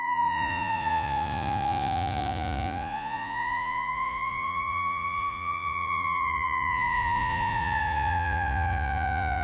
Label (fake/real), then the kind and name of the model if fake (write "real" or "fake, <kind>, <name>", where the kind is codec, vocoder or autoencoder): fake, vocoder, Vocos